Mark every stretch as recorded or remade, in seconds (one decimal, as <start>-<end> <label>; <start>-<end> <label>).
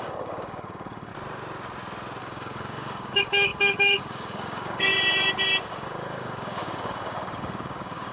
0.0-1.1 remade; 1.1-2.2 recorded; 2.2-4.9 remade; 4.9-5.6 recorded; 5.6-8.1 remade